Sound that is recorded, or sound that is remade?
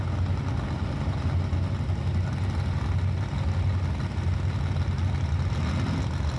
recorded